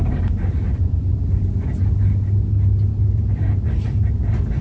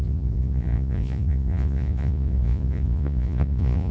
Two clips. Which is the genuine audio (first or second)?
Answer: first